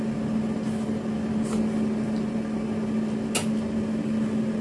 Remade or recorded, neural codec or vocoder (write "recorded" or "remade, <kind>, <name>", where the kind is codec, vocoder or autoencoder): recorded